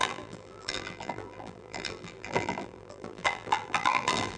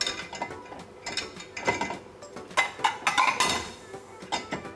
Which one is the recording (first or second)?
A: second